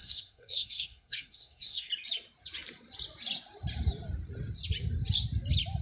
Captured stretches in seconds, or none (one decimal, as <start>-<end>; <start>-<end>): 1.9-5.8